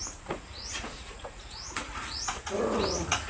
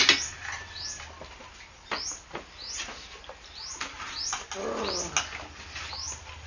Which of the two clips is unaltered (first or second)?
second